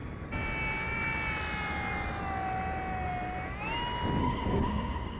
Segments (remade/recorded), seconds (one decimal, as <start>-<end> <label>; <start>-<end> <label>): 0.0-4.2 recorded; 4.2-5.2 remade